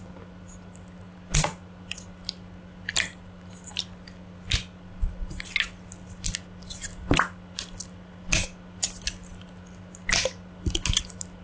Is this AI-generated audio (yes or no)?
no